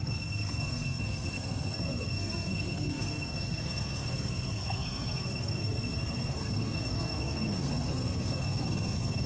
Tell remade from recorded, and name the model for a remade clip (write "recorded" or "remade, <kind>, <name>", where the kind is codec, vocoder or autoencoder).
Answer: remade, codec, SNAC